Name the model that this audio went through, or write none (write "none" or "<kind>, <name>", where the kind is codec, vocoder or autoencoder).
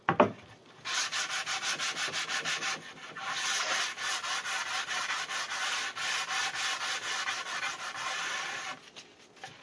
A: none